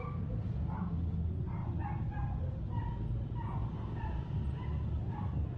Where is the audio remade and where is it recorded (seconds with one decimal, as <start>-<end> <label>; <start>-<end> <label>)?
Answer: 0.0-5.6 recorded